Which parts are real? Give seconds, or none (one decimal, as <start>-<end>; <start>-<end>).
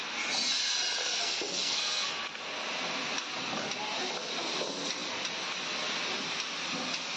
0.0-1.0; 2.1-7.2